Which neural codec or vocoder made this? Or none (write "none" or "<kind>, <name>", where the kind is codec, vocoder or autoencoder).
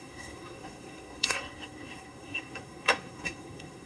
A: codec, SNAC